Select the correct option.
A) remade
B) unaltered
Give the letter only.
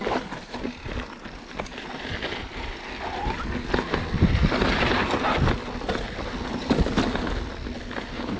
B